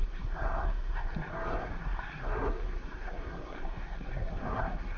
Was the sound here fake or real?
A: fake